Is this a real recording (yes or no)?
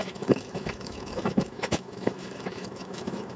no